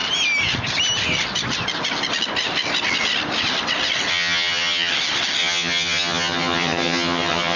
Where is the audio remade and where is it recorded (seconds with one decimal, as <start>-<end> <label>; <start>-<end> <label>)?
0.0-4.1 recorded; 4.1-4.9 remade; 4.9-5.4 recorded; 5.4-7.6 remade